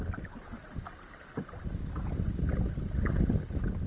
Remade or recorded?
recorded